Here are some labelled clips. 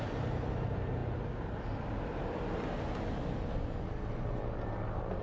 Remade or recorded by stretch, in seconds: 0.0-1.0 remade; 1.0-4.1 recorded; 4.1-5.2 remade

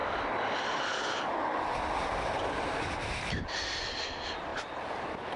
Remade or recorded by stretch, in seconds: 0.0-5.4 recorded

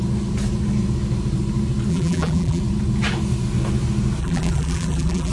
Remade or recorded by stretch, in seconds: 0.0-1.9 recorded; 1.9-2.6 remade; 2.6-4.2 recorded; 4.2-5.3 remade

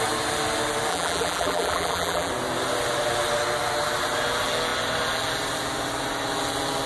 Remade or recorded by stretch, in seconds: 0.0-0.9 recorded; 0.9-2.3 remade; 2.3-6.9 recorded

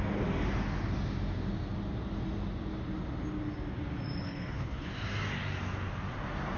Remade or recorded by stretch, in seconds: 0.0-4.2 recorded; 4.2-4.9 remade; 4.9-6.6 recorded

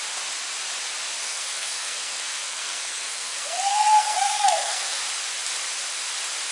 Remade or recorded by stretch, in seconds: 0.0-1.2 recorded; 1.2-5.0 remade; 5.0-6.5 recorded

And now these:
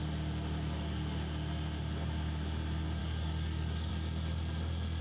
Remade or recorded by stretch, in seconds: 0.0-3.0 recorded; 3.0-3.9 remade; 3.9-5.0 recorded